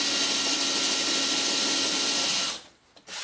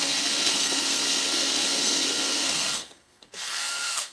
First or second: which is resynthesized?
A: second